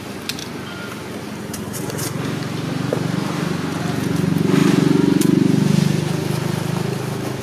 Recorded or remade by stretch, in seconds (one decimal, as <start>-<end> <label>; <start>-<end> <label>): 0.0-7.4 recorded